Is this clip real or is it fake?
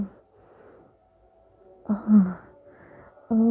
real